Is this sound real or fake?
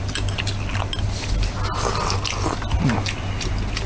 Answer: real